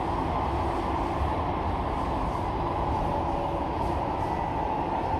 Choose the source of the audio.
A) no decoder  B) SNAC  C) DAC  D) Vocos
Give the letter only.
A